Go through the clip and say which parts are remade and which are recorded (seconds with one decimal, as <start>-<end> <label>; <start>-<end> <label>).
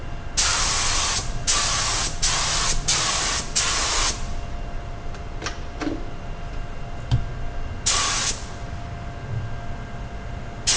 0.0-10.8 recorded